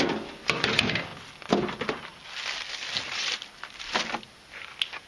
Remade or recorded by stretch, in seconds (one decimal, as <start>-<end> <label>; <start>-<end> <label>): 0.0-5.1 recorded